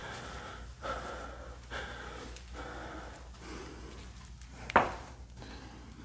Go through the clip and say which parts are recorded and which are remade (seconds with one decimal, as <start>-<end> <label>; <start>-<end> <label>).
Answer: 0.0-6.0 recorded